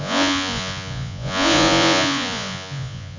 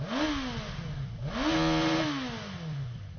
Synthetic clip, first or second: first